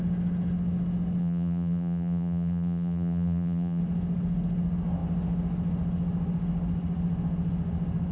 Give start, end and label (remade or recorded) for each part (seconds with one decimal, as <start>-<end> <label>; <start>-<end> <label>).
0.0-1.2 recorded; 1.2-3.8 remade; 3.8-8.1 recorded